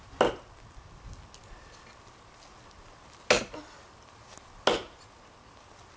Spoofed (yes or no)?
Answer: no